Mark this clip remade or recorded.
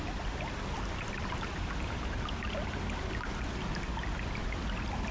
recorded